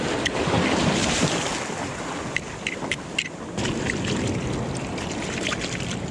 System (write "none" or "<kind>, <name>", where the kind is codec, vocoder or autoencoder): none